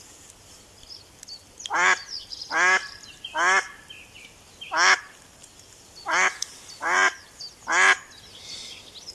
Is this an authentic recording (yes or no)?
yes